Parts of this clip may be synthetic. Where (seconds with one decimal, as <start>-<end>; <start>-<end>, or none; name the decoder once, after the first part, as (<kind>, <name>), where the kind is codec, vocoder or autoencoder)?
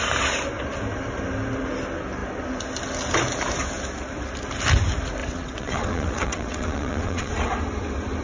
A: 5.2-7.3 (vocoder, WaveNeXt)